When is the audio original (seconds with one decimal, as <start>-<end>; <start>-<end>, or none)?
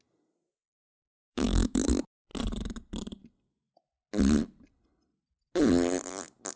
0.0-1.1; 1.9-6.6